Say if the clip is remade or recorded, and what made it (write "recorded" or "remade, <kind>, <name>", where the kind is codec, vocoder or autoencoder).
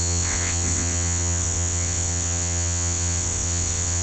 remade, vocoder, WaveNeXt